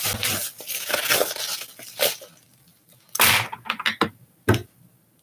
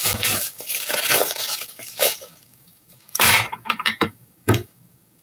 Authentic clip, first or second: first